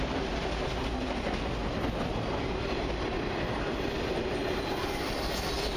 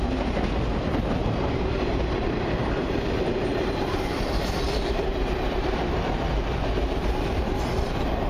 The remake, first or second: second